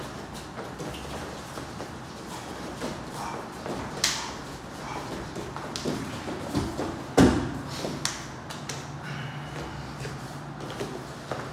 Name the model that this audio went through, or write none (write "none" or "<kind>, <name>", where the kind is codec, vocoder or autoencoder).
none